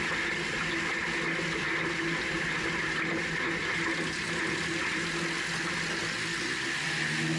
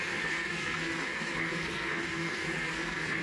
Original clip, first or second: first